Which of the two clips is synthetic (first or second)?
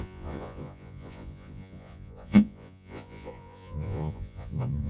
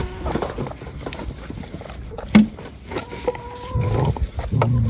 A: first